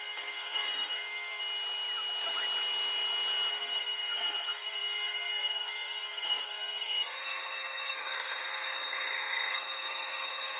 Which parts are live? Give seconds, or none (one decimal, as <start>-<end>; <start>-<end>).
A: 1.4-3.5